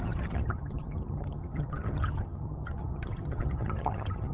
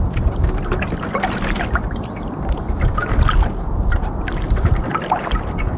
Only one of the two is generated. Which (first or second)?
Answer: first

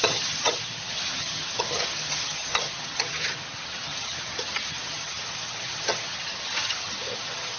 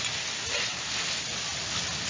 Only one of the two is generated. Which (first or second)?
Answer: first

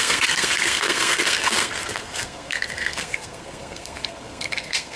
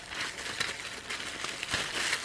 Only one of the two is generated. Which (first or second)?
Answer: first